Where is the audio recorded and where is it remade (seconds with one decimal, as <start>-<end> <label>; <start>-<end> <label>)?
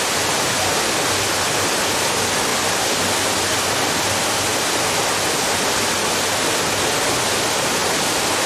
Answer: 0.0-2.5 recorded; 2.5-3.2 remade; 3.2-7.8 recorded; 7.8-8.5 remade